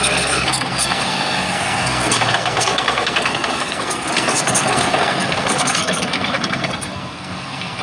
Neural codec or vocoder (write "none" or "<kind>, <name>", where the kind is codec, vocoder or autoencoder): codec, SNAC